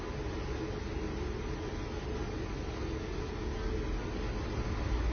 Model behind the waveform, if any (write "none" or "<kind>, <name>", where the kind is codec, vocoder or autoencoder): none